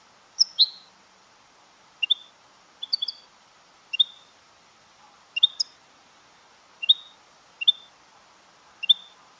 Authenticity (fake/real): real